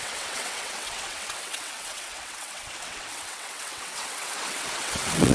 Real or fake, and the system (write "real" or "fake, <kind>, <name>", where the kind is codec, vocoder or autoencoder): fake, vocoder, WaveNeXt